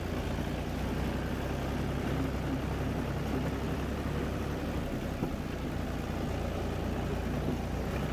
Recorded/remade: recorded